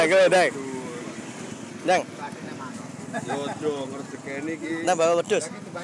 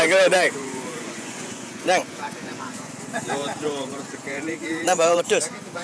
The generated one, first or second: second